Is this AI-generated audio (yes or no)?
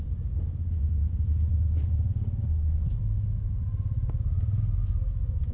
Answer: no